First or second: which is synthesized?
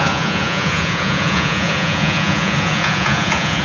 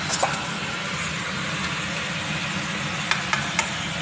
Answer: first